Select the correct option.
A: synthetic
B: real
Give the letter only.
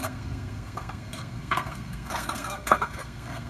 A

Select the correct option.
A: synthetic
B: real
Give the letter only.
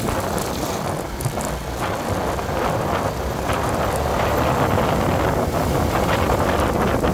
B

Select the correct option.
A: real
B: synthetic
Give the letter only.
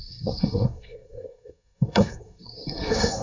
B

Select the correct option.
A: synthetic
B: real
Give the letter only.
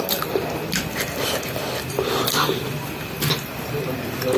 B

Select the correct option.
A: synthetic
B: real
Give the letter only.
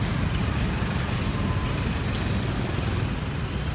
B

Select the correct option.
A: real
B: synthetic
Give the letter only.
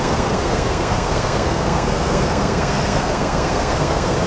B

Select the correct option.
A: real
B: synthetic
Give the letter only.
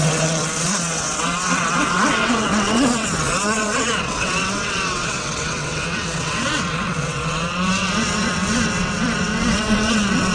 B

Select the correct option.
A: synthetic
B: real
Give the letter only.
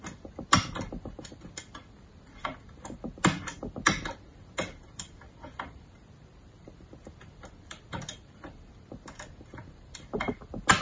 B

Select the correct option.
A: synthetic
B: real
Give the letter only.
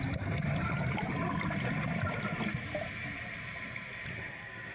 B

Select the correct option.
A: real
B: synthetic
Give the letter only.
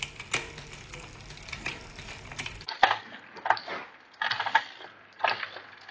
A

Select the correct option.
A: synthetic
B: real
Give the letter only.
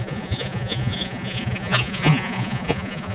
A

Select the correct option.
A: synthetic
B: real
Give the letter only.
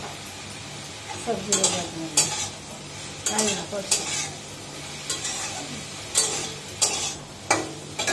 B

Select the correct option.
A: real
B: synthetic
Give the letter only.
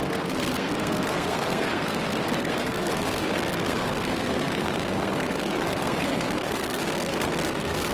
B